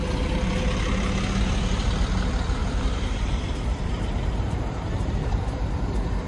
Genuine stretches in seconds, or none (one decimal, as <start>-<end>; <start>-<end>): 0.0-2.6; 5.7-6.3